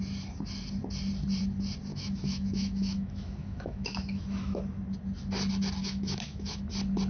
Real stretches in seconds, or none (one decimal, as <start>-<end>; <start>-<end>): 0.0-1.9; 4.6-5.8; 6.6-7.1